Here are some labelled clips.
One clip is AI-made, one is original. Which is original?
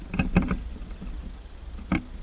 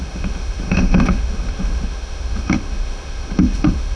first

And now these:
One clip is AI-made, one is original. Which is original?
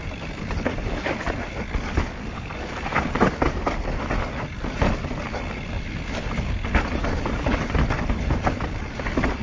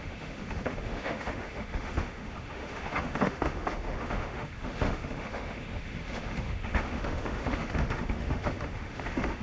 first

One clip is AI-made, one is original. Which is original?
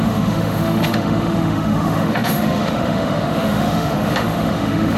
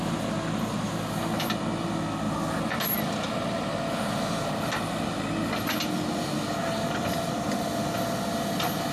second